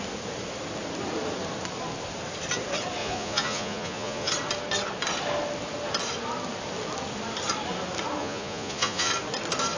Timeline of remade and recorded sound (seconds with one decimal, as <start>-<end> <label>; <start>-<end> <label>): 0.0-3.0 recorded; 3.0-4.3 remade; 4.3-8.2 recorded; 8.2-9.1 remade; 9.1-9.8 recorded